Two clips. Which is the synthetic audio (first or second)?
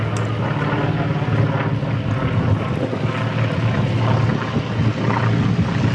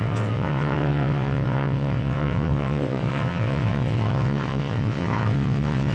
second